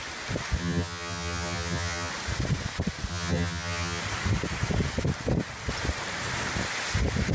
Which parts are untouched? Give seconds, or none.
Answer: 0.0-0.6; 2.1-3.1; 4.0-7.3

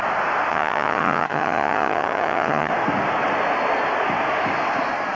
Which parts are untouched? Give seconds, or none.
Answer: 0.0-0.5; 2.7-5.1

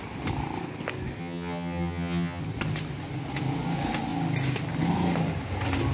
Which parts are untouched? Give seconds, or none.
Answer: 0.0-1.2; 2.4-5.9

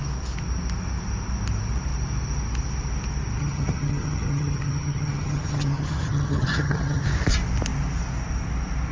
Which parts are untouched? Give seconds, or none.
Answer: 0.0-3.4; 7.0-8.9

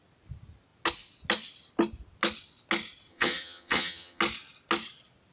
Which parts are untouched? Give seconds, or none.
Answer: 0.0-3.1; 4.2-5.3